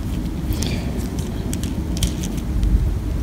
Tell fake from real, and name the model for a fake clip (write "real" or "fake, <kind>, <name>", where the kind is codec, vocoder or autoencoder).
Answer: real